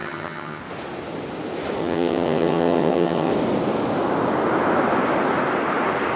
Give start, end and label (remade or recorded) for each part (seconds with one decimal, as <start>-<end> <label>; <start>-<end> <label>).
0.0-0.6 remade; 0.6-1.8 recorded; 1.8-3.3 remade; 3.3-6.2 recorded